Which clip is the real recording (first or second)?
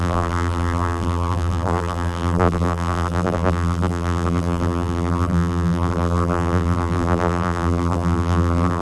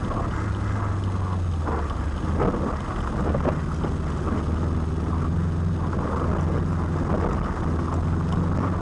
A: second